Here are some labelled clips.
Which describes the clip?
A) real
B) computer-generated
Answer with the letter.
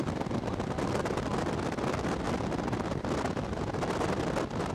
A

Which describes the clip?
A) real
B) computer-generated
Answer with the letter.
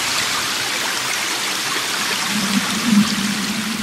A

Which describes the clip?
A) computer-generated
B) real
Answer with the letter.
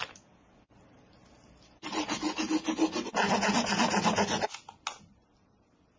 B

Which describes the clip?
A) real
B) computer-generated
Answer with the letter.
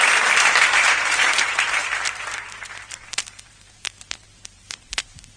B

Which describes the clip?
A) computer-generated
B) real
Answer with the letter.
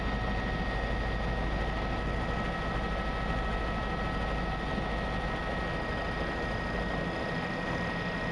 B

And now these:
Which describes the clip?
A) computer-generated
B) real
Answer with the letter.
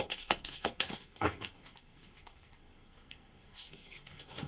A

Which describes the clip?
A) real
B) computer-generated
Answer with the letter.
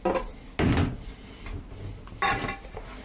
A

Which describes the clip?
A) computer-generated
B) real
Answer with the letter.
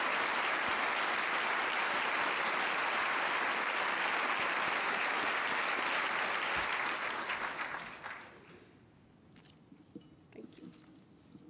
B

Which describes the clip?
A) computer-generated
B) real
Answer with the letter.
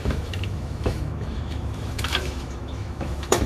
A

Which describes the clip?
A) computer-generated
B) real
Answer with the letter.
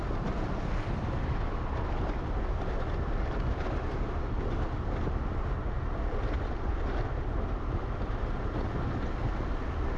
B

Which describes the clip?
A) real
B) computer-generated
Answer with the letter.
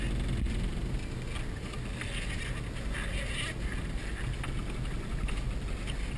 A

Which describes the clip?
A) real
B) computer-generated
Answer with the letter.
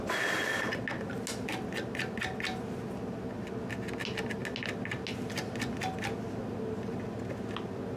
A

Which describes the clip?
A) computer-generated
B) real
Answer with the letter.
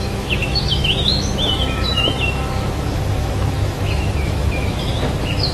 A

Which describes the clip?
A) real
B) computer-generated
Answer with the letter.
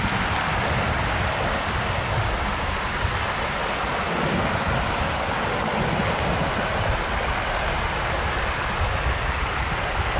A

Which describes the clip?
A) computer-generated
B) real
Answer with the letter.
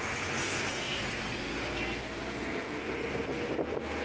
B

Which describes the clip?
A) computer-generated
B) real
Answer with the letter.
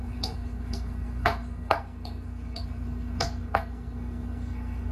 A